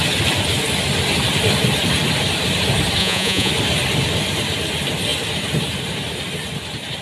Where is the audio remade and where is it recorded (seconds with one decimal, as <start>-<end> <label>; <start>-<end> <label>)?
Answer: 0.0-3.0 recorded; 3.0-3.5 remade; 3.5-7.0 recorded